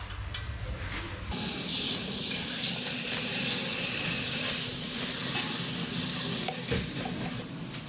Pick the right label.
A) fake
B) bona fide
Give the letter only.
B